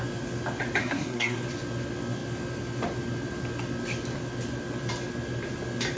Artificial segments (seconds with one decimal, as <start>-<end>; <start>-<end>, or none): 0.8-1.4